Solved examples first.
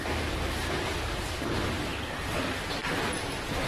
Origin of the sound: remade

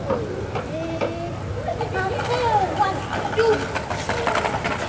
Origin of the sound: recorded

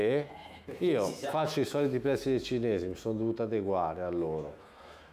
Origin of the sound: remade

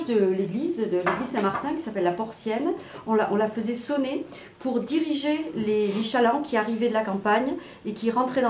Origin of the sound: recorded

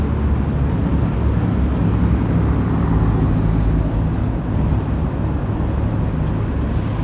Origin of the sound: recorded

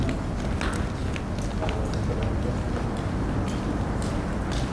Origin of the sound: recorded